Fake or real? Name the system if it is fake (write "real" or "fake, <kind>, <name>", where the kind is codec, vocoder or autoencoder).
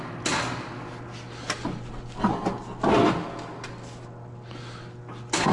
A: real